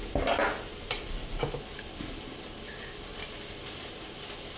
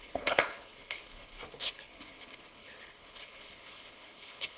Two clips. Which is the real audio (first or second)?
first